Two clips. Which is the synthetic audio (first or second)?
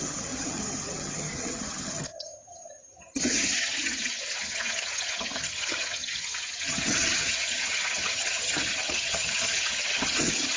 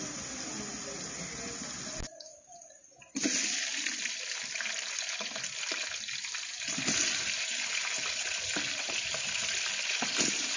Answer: first